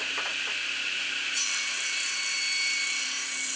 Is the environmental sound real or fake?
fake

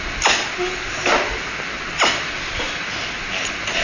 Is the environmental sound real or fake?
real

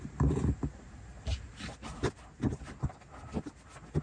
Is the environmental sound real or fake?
real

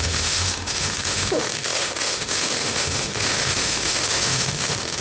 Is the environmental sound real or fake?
fake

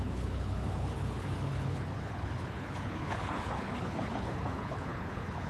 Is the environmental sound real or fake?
fake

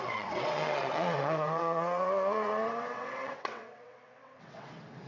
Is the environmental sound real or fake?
fake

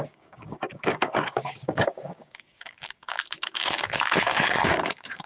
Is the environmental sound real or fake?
fake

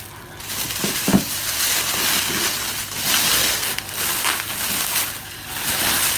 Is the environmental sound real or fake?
real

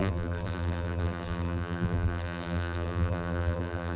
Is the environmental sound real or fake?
fake